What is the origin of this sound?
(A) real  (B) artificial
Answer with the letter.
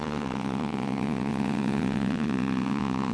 B